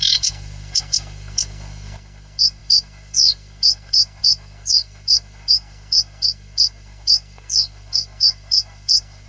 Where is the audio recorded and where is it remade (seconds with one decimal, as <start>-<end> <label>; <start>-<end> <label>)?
0.0-9.3 remade